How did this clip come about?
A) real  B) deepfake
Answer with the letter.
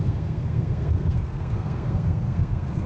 B